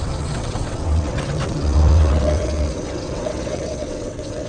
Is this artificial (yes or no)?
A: yes